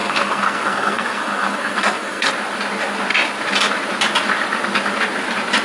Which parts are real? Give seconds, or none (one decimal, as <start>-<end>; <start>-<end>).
2.3-5.6